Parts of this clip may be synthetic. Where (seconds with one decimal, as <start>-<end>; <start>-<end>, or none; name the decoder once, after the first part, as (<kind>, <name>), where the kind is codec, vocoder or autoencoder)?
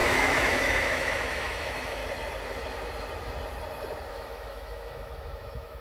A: 0.0-2.0 (autoencoder, DAC-VAE); 4.1-5.8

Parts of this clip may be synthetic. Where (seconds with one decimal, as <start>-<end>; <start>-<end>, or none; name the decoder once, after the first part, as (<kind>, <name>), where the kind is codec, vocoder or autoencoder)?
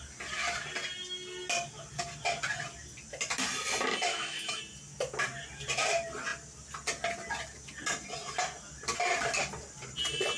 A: 4.1-4.6 (autoencoder, DAC-VAE)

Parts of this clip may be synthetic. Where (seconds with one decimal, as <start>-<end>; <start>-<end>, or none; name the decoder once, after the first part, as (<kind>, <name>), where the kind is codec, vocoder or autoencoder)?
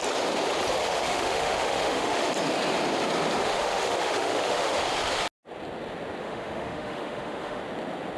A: 0.8-2.3 (autoencoder, DAC-VAE); 3.4-4.7; 6.2-7.6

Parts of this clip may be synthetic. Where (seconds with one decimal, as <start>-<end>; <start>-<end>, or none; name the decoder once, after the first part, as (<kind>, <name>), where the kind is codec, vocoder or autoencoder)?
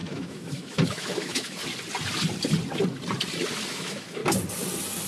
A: 0.0-1.6 (autoencoder, DAC-VAE); 3.7-4.2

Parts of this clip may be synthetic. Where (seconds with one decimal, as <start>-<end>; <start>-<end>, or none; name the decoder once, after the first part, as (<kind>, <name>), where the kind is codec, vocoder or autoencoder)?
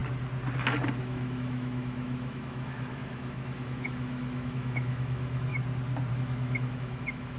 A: 1.0-5.5 (autoencoder, DAC-VAE); 6.1-7.4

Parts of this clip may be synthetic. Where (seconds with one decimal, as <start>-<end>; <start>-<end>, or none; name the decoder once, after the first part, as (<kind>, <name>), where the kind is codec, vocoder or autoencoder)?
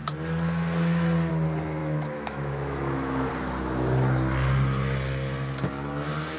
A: 1.8-3.3 (autoencoder, DAC-VAE)